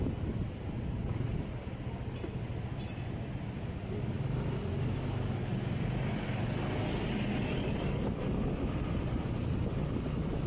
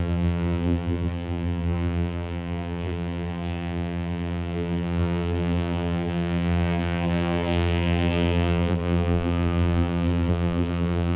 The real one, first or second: first